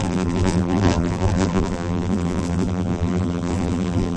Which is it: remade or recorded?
remade